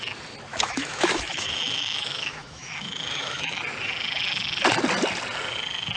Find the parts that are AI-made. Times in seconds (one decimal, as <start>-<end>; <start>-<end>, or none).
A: 0.5-3.6